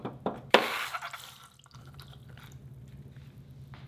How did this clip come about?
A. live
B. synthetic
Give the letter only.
A